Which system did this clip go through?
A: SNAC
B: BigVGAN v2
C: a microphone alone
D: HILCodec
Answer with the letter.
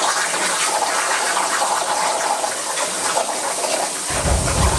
C